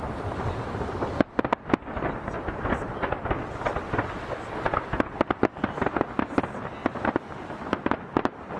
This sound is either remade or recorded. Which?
recorded